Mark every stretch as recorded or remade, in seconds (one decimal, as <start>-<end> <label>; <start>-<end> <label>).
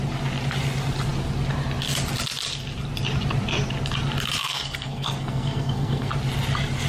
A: 0.0-4.4 recorded; 4.4-6.1 remade; 6.1-6.9 recorded